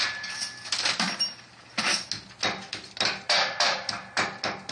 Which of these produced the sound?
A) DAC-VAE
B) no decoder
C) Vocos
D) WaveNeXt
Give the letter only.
B